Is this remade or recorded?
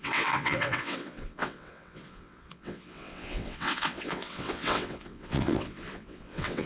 remade